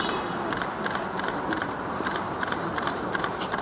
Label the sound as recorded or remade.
remade